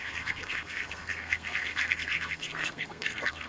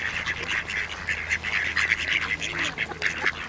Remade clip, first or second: first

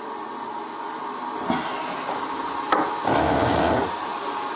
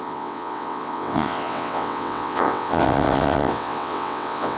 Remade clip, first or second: second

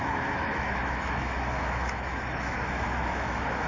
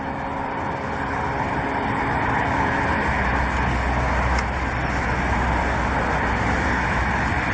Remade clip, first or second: first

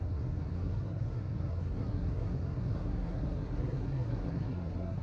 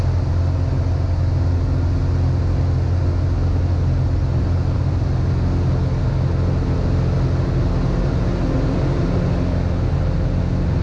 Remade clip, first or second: first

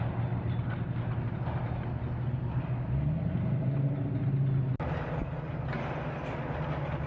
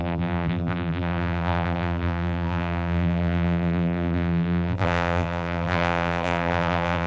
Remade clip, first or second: second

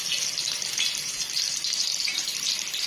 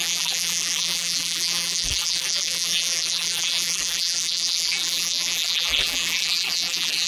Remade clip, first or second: second